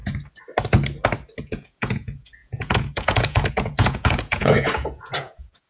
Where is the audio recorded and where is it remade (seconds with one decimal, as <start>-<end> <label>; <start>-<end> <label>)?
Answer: 0.0-1.4 recorded; 1.4-5.7 remade